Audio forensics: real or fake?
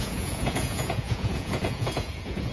fake